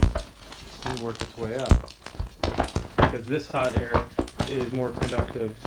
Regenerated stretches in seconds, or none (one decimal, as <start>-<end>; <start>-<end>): 0.0-0.9; 1.9-5.7